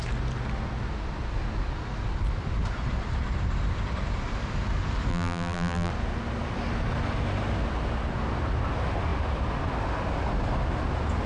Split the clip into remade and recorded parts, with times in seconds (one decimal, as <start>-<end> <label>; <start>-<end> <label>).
0.0-5.1 recorded; 5.1-5.9 remade; 5.9-11.3 recorded